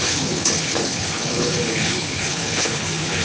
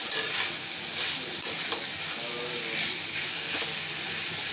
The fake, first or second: first